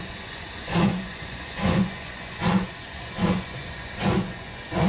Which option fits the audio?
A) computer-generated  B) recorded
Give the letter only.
A